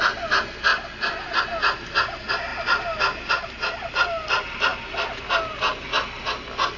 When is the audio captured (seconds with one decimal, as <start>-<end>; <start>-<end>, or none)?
0.0-4.7; 5.3-6.8